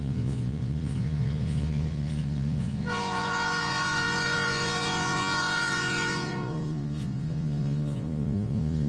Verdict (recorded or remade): remade